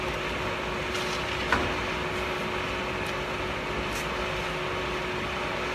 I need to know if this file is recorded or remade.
recorded